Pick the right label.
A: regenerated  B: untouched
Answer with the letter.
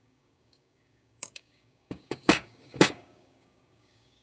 A